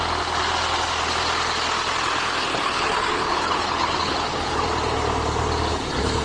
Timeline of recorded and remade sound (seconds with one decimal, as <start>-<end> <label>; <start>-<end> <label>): 0.0-2.5 recorded; 2.5-4.6 remade; 4.6-5.7 recorded; 5.7-6.2 remade